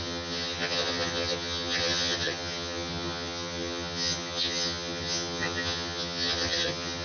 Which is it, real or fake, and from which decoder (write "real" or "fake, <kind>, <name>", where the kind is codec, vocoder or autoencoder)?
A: fake, vocoder, HiFi-GAN